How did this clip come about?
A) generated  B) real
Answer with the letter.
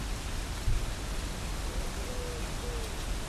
B